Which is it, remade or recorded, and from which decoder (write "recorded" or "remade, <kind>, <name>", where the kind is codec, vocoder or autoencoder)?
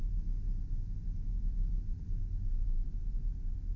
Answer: recorded